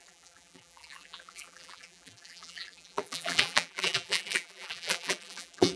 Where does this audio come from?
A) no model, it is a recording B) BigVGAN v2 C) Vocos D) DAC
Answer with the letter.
B